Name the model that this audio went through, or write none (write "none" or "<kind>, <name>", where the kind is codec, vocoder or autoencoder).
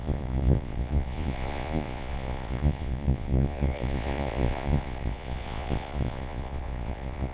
vocoder, Vocos